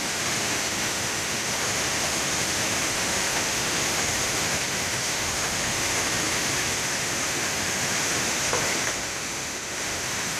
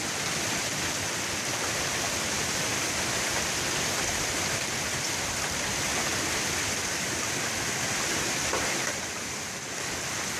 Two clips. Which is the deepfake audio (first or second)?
first